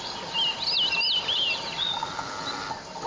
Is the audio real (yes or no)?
yes